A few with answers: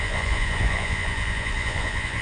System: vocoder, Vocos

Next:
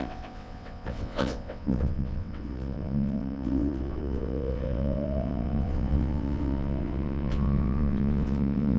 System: vocoder, WaveNeXt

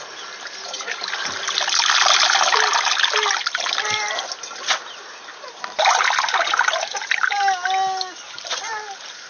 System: none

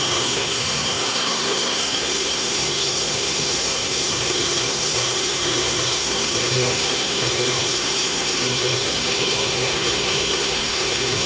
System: codec, SNAC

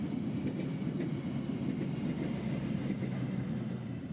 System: none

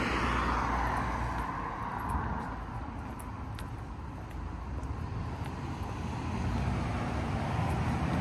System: none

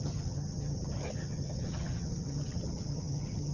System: vocoder, HiFi-GAN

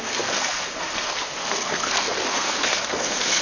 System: codec, SNAC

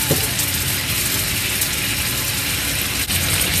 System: none